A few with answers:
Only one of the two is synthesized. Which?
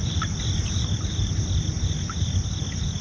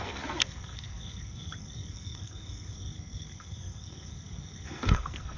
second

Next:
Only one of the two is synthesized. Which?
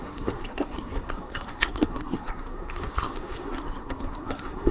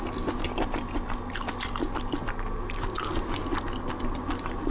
first